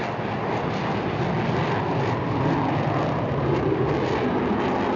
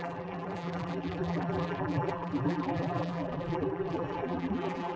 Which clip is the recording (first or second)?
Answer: first